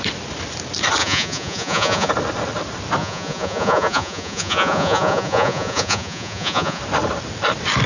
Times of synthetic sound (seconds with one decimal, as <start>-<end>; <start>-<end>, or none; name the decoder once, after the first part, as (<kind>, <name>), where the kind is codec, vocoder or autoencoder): 1.0-2.1 (vocoder, Vocos); 3.0-6.8